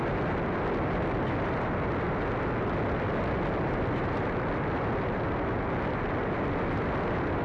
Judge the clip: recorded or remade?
recorded